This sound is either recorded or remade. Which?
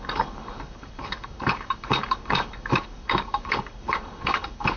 remade